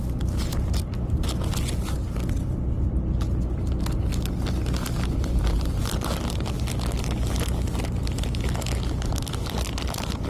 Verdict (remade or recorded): recorded